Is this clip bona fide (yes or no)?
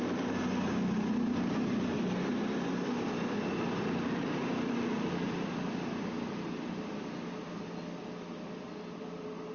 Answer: yes